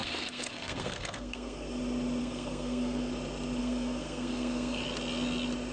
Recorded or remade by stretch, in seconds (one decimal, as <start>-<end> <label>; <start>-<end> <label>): 0.0-1.8 remade; 1.8-2.2 recorded; 2.2-3.1 remade; 3.1-3.6 recorded; 3.6-4.8 remade; 4.8-5.7 recorded